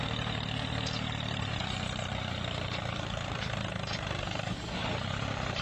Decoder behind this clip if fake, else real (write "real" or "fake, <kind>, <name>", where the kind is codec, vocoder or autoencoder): fake, vocoder, BigVGAN v2